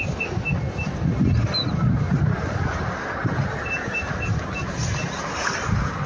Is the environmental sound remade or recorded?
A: recorded